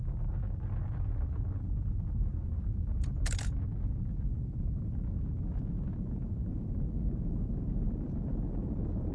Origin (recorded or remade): recorded